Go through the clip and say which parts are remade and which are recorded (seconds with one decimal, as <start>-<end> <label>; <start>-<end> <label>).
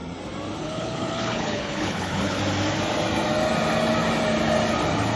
0.0-0.6 recorded; 0.6-2.4 remade; 2.4-5.2 recorded